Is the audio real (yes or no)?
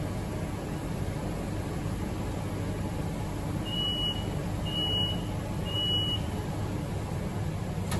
yes